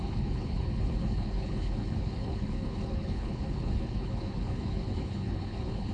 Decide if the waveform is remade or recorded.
remade